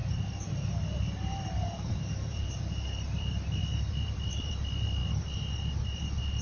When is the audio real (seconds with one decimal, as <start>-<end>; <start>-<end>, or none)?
5.0-6.0

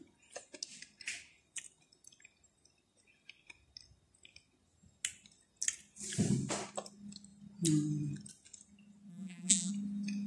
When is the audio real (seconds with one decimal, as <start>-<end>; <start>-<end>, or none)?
0.0-9.1; 9.7-10.3

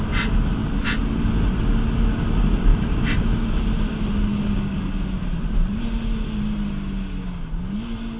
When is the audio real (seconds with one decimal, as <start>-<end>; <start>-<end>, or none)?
0.0-8.2